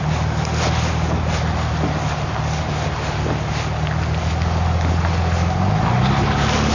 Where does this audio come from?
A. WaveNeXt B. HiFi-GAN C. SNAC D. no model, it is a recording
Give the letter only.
D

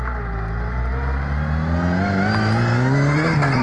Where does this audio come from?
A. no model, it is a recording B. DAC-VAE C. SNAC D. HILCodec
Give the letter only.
A